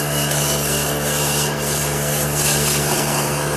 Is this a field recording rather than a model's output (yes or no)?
no